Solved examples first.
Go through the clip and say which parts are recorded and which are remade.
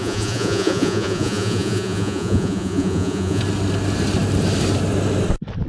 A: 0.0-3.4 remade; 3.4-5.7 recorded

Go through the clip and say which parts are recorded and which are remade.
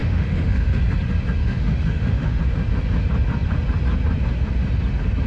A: 0.0-0.8 remade; 0.8-1.4 recorded; 1.4-2.4 remade; 2.4-5.3 recorded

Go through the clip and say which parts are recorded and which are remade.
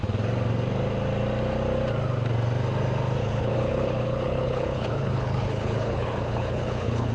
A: 0.0-3.2 recorded; 3.2-7.1 remade